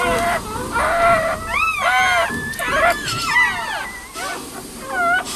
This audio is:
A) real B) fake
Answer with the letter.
A